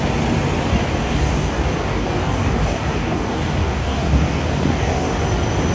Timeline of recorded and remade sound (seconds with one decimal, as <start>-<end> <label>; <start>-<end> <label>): 0.0-0.7 recorded; 0.7-1.5 remade; 1.5-1.9 recorded; 1.9-5.2 remade; 5.2-5.7 recorded